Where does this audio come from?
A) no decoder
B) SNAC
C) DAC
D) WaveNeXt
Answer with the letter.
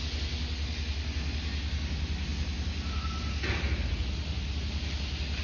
A